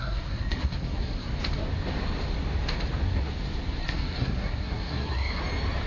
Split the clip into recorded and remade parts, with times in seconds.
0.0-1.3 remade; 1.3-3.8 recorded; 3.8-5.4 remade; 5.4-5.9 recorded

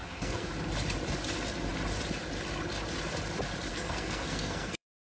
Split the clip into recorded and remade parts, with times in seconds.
0.0-0.5 remade; 0.5-3.7 recorded; 3.7-5.1 remade

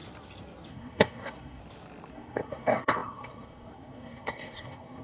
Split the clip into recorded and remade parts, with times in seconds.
0.0-0.7 recorded; 0.7-1.6 remade; 1.6-2.1 recorded; 2.1-5.0 remade

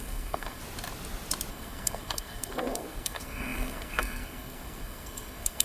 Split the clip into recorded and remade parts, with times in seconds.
0.0-0.6 remade; 0.6-1.5 recorded; 1.5-5.6 remade